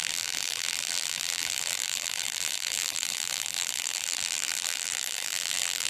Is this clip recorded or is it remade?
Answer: remade